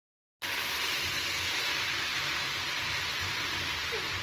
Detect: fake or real real